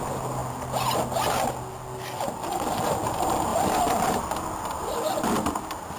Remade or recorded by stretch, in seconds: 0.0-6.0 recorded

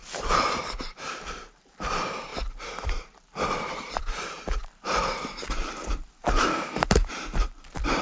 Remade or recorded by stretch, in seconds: 0.0-8.0 remade